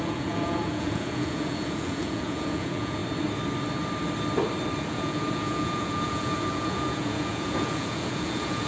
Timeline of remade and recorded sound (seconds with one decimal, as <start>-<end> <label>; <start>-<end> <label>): 0.0-3.0 remade; 3.0-4.8 recorded; 4.8-8.7 remade